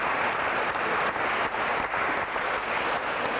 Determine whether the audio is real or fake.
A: real